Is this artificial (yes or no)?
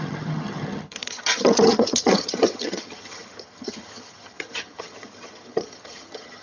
yes